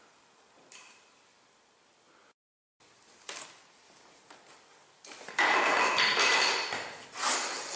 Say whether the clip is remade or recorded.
recorded